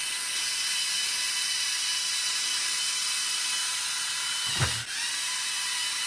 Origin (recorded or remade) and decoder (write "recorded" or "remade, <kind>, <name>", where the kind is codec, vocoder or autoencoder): recorded